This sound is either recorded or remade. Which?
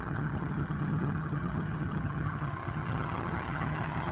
remade